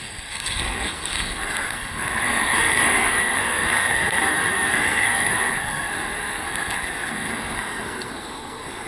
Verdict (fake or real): fake